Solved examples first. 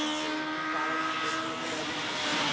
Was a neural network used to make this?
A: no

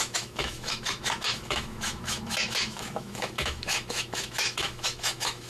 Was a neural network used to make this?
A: yes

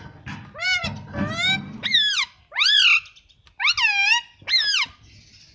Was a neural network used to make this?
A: no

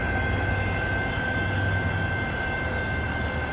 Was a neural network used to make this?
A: no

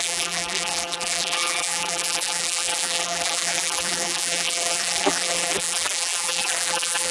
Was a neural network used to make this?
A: yes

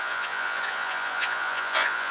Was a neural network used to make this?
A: yes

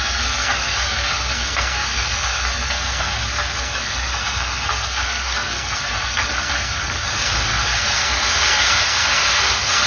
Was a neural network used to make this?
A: yes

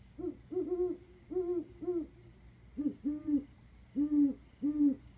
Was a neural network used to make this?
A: no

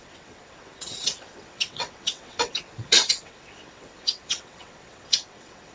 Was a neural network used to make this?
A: yes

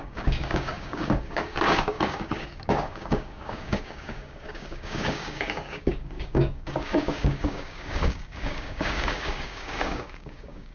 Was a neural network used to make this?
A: yes